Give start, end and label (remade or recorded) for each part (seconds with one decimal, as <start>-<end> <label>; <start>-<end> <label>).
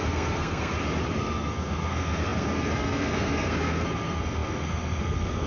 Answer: 0.0-0.7 remade; 0.7-1.2 recorded; 1.2-5.5 remade